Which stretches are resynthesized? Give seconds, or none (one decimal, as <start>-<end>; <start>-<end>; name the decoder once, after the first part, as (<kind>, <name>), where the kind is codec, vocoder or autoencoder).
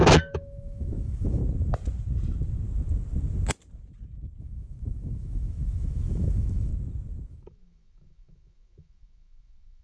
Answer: 0.0-1.4 (autoencoder, DAC-VAE); 4.4-6.7; 7.3-9.8